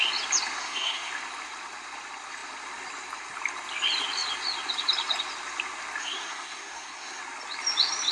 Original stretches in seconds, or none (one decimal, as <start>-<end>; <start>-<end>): 0.0-0.6; 1.1-6.0; 7.2-8.1